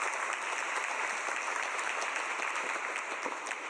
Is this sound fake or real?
real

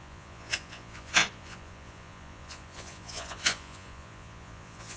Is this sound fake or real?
fake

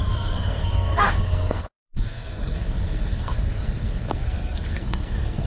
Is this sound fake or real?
fake